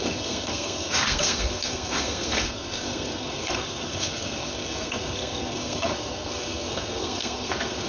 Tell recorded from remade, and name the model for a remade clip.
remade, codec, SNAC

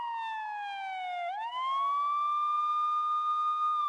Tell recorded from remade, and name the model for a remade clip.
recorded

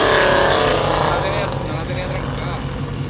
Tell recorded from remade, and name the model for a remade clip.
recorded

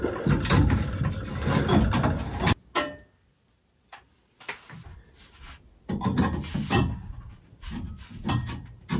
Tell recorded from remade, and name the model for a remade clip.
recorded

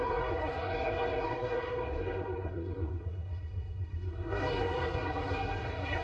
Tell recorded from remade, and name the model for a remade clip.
remade, codec, SNAC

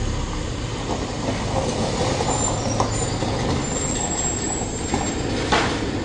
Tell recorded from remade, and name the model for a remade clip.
recorded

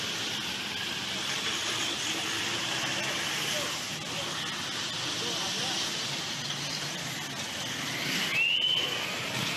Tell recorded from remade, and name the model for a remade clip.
recorded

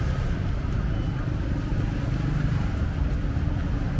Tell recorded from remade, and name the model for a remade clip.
recorded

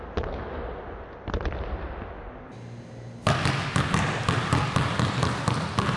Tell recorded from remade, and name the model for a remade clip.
recorded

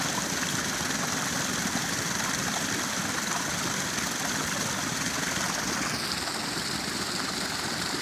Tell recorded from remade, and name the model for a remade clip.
recorded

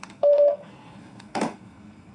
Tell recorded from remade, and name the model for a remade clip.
remade, codec, SNAC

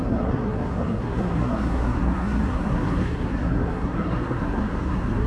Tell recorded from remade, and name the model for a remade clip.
remade, codec, SNAC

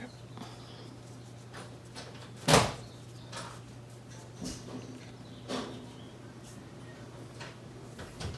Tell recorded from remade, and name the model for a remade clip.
recorded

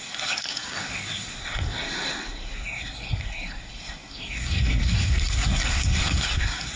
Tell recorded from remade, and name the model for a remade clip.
remade, codec, SNAC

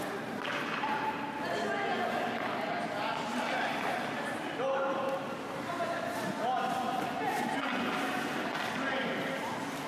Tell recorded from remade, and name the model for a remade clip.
recorded